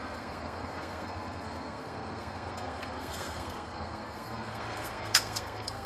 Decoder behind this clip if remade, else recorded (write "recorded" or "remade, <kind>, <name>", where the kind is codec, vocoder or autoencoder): remade, codec, SNAC